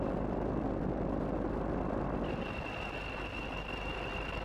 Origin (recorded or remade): recorded